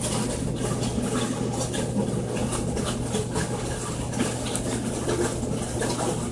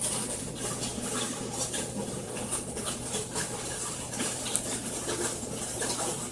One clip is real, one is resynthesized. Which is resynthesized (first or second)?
second